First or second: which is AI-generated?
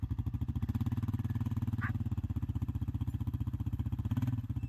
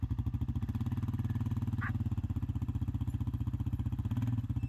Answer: first